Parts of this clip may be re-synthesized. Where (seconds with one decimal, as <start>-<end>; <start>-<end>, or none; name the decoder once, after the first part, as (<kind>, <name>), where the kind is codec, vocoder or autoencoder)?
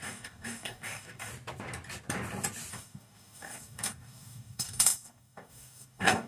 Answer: 0.0-1.3 (codec, DAC); 2.7-6.3